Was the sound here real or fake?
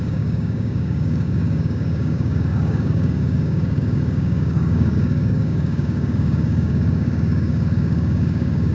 fake